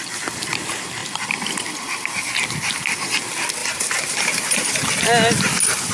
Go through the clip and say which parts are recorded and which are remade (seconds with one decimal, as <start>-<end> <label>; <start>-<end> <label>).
0.0-3.6 recorded; 3.6-4.7 remade; 4.7-5.9 recorded